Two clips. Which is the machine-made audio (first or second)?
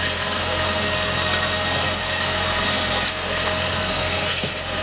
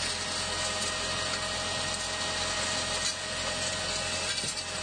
first